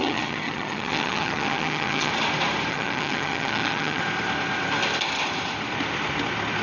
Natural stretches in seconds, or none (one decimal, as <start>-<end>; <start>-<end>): 2.1-2.7; 4.0-6.6